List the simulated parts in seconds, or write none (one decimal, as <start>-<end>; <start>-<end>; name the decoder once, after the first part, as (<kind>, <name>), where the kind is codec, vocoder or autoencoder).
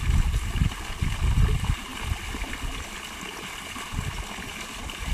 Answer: none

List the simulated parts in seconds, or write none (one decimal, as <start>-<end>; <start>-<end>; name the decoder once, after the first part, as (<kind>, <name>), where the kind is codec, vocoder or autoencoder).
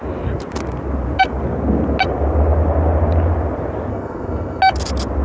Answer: 3.9-4.6 (codec, SNAC)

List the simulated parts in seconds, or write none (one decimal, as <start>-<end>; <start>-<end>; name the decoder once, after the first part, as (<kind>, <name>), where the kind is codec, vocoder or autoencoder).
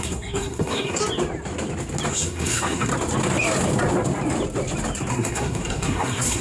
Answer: 0.0-1.0 (codec, SNAC); 2.1-2.9; 5.1-6.4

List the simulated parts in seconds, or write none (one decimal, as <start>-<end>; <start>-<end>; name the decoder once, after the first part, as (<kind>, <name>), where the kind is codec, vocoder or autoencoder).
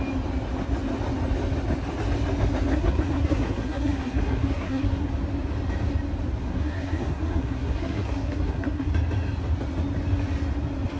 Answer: 2.7-5.1 (codec, SNAC); 6.4-8.9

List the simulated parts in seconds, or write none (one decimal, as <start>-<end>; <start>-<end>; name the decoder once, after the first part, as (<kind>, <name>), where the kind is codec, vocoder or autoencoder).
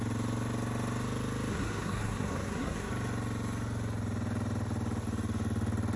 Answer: 1.5-2.9 (codec, SNAC)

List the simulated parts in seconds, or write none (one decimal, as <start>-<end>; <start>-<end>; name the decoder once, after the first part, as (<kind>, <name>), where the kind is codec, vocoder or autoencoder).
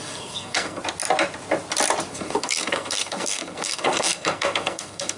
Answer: 0.0-0.8 (codec, SNAC); 2.1-5.2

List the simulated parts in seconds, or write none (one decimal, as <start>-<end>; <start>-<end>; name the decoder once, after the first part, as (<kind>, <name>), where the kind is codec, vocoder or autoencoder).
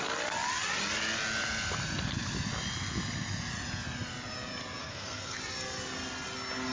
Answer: 4.8-5.4 (codec, SNAC)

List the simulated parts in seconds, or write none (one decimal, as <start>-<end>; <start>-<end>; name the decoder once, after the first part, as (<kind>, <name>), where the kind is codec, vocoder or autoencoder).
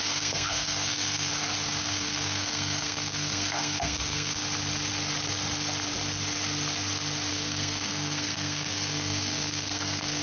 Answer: 0.0-1.3 (codec, SNAC); 1.8-4.4; 7.3-10.2